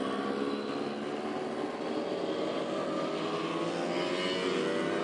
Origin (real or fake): real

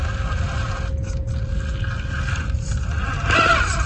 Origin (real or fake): real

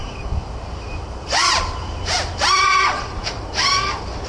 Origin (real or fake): real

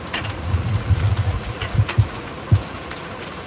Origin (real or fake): fake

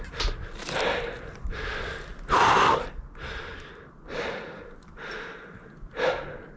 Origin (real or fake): real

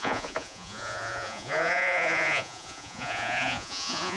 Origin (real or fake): fake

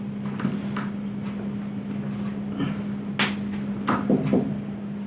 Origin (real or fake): real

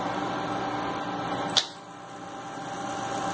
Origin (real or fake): real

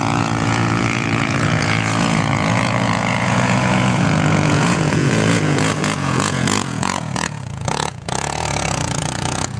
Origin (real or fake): fake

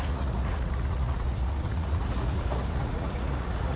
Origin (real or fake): fake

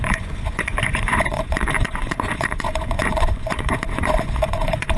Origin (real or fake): fake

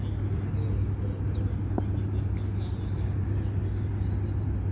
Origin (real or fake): real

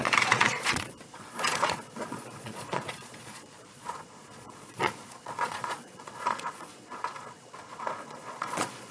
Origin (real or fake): fake